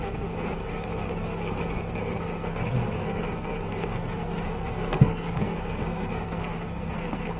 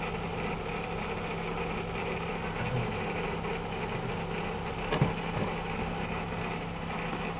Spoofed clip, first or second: first